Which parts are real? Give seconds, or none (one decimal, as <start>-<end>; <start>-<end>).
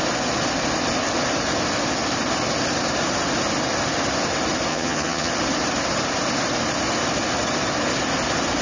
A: 0.0-4.7; 5.3-8.6